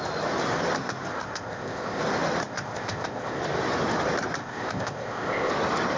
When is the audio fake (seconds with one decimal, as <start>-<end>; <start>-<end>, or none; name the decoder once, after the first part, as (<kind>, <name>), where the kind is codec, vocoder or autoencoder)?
1.1-2.0 (codec, ZipCodec); 2.4-3.4; 4.4-5.5